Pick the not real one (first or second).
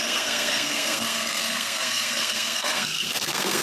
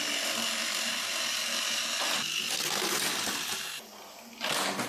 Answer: first